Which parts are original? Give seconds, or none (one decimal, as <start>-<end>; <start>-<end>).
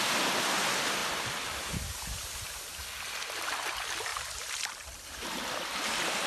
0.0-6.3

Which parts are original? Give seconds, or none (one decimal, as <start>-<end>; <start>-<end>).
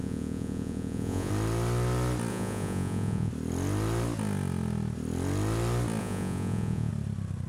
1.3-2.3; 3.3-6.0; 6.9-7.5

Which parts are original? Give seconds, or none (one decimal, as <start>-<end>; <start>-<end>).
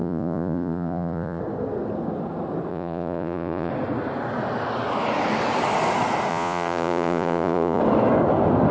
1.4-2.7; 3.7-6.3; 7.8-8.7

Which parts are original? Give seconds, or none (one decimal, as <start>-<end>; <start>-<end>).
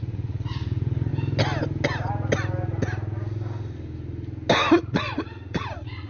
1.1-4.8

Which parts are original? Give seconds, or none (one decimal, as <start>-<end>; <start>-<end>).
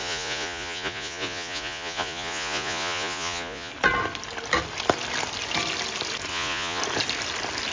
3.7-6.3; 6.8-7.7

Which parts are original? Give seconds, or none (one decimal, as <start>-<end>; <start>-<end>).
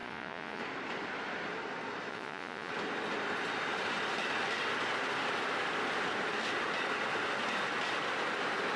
0.6-2.1; 2.7-8.8